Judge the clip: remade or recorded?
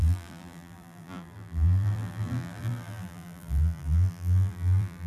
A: remade